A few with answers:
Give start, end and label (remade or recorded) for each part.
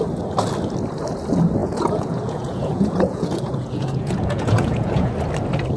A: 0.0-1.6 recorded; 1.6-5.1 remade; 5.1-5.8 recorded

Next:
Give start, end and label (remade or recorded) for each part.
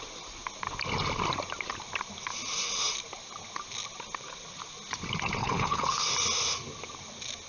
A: 0.0-5.4 recorded; 5.4-6.1 remade; 6.1-7.5 recorded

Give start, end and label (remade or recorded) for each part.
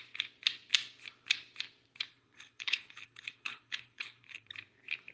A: 0.0-2.1 recorded; 2.1-4.5 remade; 4.5-5.1 recorded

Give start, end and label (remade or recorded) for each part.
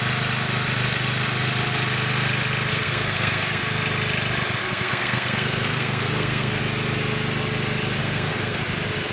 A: 0.0-2.7 recorded; 2.7-3.6 remade; 3.6-4.6 recorded; 4.6-6.6 remade; 6.6-8.0 recorded; 8.0-8.6 remade; 8.6-9.1 recorded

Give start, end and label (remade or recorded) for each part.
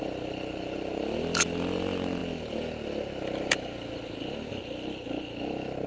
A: 0.0-5.9 recorded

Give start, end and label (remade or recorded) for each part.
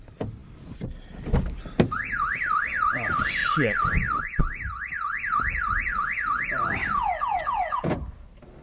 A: 0.0-3.4 recorded; 3.4-4.4 remade; 4.4-8.6 recorded